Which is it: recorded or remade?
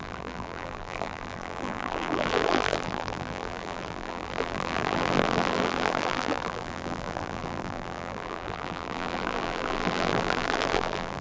remade